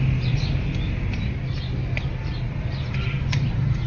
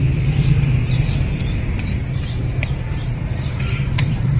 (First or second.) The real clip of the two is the first